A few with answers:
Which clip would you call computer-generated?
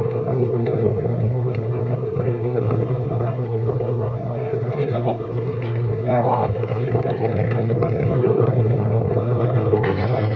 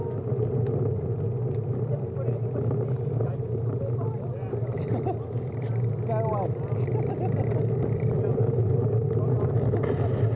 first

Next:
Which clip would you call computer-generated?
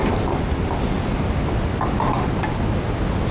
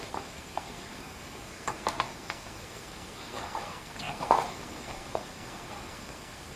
second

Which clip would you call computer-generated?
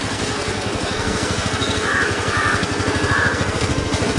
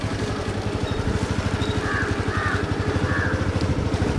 first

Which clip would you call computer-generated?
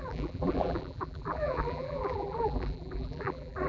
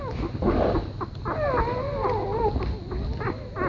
first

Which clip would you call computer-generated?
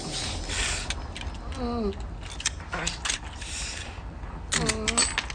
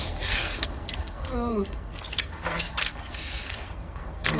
second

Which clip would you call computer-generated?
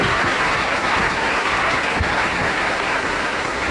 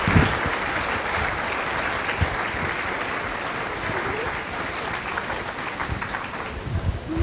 first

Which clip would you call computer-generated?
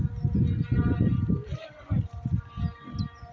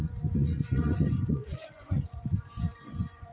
second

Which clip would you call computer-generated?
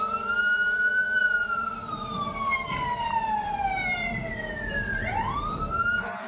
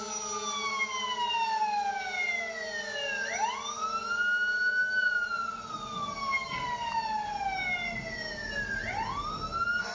first